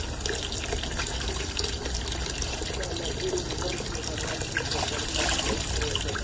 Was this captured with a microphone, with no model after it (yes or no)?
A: yes